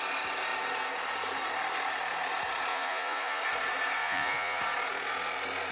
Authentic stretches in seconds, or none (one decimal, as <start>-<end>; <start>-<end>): 0.0-2.7; 3.4-4.0; 4.6-5.7